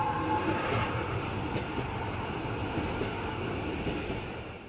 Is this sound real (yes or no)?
yes